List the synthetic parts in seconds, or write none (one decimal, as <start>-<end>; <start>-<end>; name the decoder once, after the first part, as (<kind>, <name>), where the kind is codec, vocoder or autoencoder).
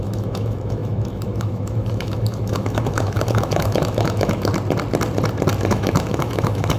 0.0-4.5 (autoencoder, DAC-VAE); 5.6-6.8